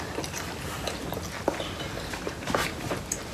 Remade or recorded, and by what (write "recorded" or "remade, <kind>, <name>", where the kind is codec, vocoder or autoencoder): recorded